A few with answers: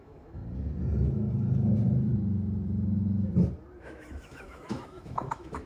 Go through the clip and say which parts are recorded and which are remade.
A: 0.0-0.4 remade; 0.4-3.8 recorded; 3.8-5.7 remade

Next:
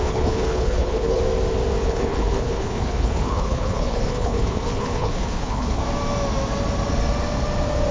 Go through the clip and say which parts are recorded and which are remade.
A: 0.0-1.2 remade; 1.2-1.8 recorded; 1.8-5.8 remade; 5.8-7.9 recorded

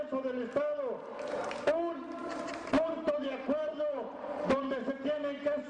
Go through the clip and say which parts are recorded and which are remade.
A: 0.0-2.2 recorded; 2.2-4.9 remade; 4.9-5.7 recorded